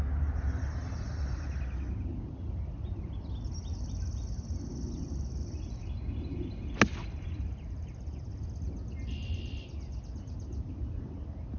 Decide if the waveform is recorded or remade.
recorded